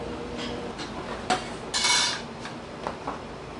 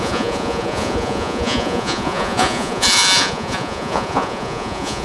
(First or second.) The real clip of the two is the first